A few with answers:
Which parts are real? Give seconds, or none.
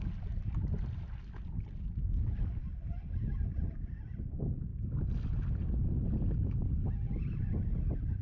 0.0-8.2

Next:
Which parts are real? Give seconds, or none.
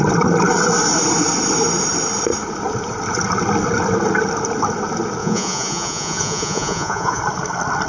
0.0-5.2; 7.2-7.9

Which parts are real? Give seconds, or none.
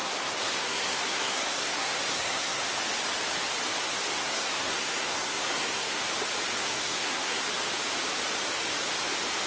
2.6-4.2; 6.0-6.6; 7.4-9.5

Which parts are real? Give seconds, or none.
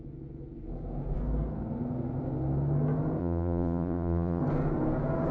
0.0-3.2; 4.4-5.3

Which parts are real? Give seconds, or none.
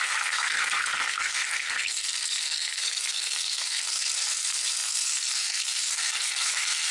none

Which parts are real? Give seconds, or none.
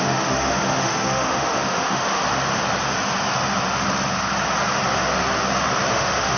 2.2-5.9